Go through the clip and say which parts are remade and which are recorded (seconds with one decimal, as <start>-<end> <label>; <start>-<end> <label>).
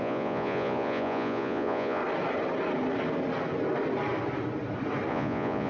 0.0-2.0 remade; 2.0-5.1 recorded; 5.1-5.7 remade